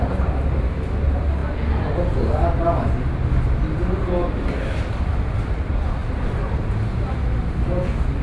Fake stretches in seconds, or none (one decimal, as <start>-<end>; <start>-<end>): none